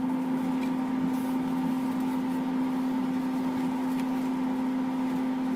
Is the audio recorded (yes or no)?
yes